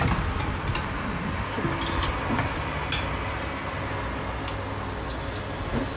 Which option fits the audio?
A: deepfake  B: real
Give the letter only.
B